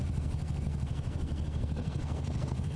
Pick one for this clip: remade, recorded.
remade